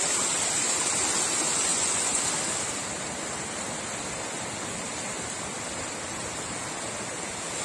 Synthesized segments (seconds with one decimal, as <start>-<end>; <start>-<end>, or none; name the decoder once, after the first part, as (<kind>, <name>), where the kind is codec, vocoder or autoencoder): 1.7-2.2 (vocoder, Vocos)